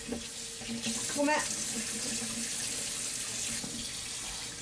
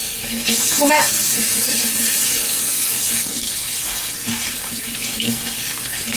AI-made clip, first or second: second